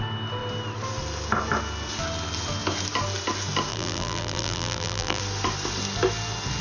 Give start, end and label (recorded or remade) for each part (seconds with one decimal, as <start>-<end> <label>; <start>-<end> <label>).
0.0-3.7 recorded; 3.7-5.2 remade; 5.2-6.6 recorded